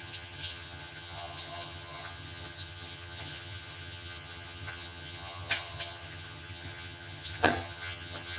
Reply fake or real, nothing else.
fake